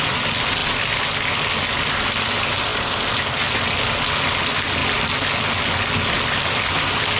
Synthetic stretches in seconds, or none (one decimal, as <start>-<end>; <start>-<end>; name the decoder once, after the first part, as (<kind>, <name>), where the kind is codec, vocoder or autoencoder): none